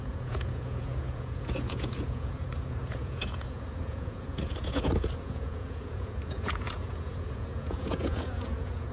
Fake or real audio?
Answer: fake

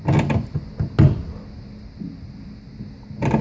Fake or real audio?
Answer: real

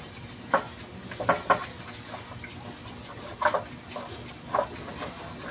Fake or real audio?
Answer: real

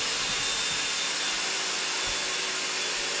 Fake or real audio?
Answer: real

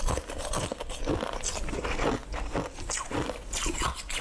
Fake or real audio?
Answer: real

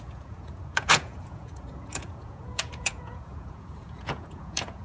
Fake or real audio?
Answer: fake